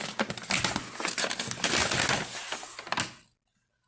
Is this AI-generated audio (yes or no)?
no